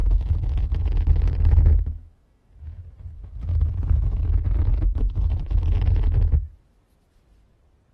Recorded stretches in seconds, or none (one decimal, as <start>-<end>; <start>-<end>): 2.8-4.7; 5.4-7.9